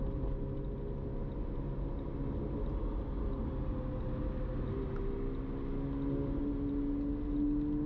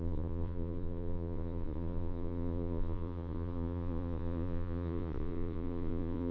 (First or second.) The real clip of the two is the first